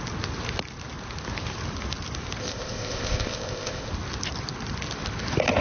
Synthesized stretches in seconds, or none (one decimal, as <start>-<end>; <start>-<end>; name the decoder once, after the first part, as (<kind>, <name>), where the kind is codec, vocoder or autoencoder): 2.4-3.9 (codec, ZipCodec)